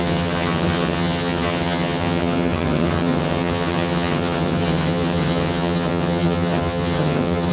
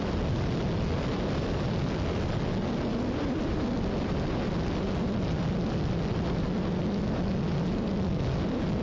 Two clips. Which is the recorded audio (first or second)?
second